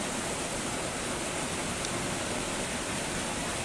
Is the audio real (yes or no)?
yes